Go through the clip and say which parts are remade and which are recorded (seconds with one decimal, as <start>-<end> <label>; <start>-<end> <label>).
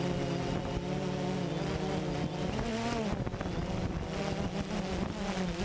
0.0-5.6 recorded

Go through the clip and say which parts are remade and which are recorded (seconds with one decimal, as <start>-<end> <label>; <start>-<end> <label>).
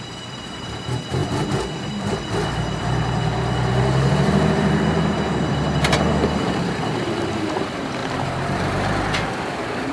0.0-9.9 remade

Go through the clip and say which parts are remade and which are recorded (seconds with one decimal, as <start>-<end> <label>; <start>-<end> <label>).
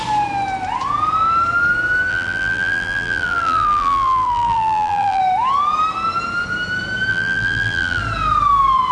0.0-2.1 recorded; 2.1-5.2 remade; 5.2-7.1 recorded; 7.1-8.0 remade; 8.0-8.9 recorded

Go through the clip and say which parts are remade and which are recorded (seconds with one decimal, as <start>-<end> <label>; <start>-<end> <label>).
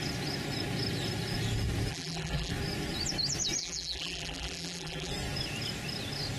0.0-1.9 recorded; 1.9-2.5 remade; 2.5-3.6 recorded; 3.6-5.1 remade; 5.1-6.4 recorded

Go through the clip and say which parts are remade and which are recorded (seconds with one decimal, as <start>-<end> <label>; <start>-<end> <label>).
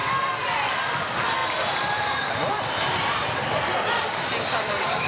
0.0-0.7 recorded; 0.7-5.1 remade